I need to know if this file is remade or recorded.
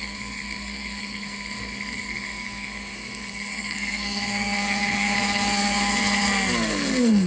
remade